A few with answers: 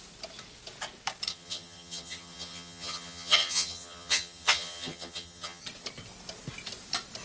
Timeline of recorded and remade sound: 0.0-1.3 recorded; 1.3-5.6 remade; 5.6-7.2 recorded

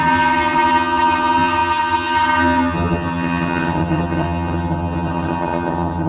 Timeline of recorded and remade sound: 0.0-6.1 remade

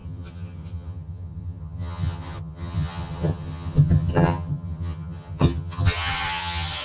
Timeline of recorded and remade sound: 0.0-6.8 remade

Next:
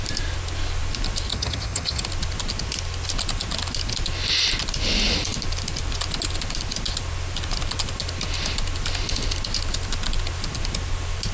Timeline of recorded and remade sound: 0.0-1.3 recorded; 1.3-2.0 remade; 2.0-11.3 recorded

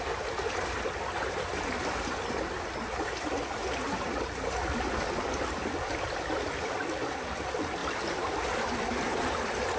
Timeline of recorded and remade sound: 0.0-9.8 recorded